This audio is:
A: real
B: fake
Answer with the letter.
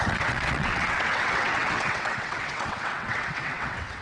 B